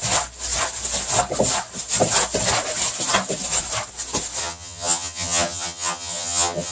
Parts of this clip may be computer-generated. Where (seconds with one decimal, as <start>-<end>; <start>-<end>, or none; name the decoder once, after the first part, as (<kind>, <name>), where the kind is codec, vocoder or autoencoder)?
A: 4.4-6.7 (vocoder, HiFi-GAN)